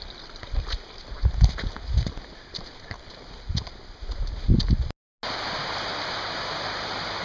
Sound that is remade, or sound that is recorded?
recorded